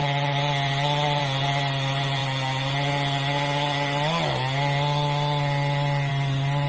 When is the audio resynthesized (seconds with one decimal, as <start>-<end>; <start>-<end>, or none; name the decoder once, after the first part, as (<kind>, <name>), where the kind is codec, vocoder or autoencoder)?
none